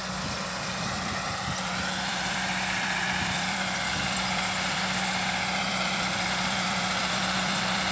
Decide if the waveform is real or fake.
fake